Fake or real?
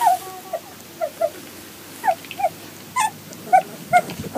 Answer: real